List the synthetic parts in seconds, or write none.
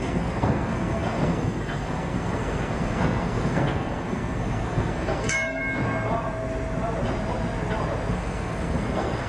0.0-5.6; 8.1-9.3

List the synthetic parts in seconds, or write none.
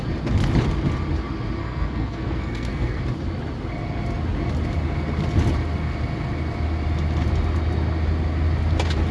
1.6-3.0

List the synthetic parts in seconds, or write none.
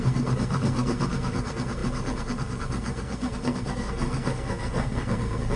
0.0-5.6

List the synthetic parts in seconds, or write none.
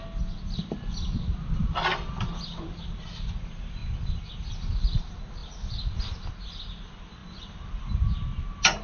none